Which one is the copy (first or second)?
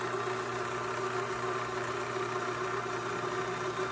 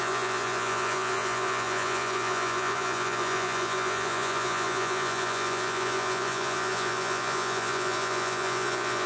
second